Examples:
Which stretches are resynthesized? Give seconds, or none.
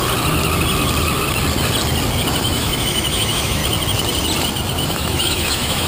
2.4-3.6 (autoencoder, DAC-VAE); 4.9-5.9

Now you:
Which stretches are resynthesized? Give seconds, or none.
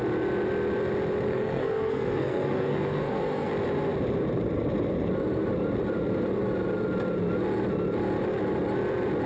1.3-3.5 (codec, SNAC)